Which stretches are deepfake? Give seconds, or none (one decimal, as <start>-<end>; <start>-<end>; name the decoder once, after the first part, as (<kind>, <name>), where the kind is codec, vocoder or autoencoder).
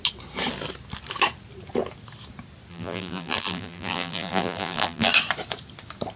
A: 2.7-5.1 (vocoder, BigVGAN v2)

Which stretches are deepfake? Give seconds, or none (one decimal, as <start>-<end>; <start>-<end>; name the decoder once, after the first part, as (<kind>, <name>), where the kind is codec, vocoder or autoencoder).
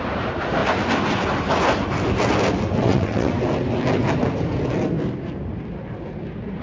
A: 2.8-3.3 (vocoder, WaveNeXt)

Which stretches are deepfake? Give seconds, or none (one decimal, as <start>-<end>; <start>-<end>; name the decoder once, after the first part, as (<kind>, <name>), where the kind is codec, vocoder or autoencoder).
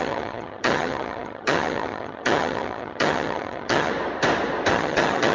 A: 0.0-3.9 (vocoder, HiFi-GAN); 4.7-5.3